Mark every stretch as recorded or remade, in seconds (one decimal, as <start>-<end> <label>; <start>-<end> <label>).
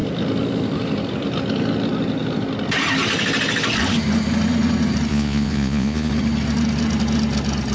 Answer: 0.0-5.1 recorded; 5.1-6.1 remade; 6.1-7.7 recorded